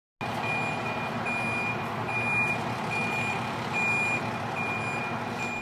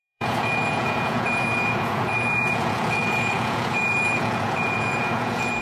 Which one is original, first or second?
first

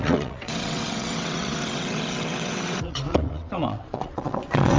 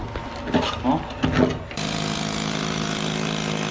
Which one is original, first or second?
second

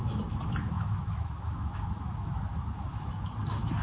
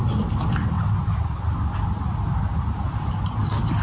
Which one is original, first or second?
second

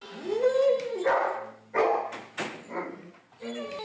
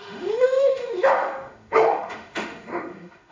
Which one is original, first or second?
first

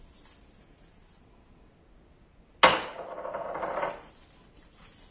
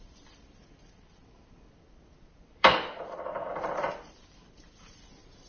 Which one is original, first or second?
first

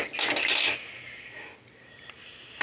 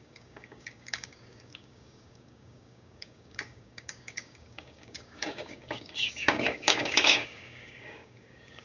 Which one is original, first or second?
first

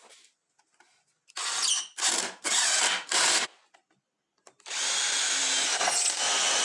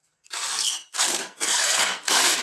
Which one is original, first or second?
first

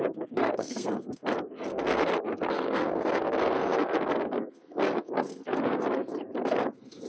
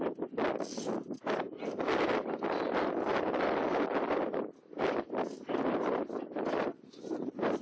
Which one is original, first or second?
second